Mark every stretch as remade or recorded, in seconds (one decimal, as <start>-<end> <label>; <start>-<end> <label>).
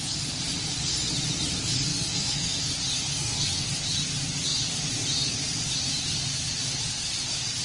0.0-1.9 recorded; 1.9-2.6 remade; 2.6-3.1 recorded; 3.1-3.7 remade; 3.7-7.6 recorded